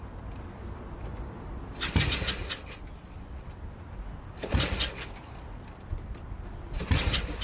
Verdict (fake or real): real